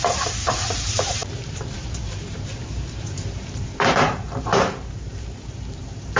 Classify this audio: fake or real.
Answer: fake